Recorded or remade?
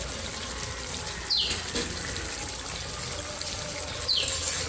recorded